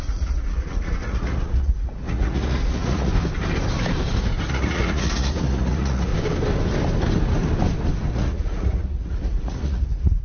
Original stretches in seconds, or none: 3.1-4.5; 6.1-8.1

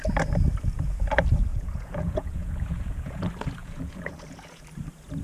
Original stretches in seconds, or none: 0.0-1.5; 3.2-3.6; 4.6-5.2

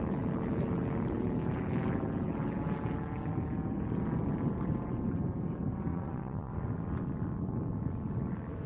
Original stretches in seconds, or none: 0.0-5.9; 6.5-8.7

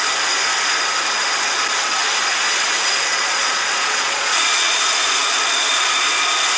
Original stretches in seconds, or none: 0.0-3.1; 4.8-6.6

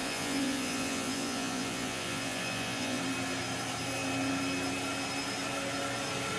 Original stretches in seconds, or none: 3.0-6.4